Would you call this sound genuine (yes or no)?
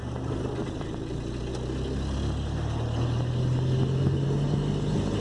yes